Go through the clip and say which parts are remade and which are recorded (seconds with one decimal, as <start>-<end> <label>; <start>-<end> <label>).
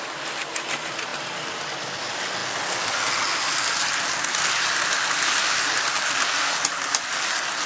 0.0-7.7 recorded